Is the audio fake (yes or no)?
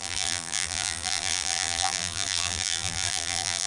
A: yes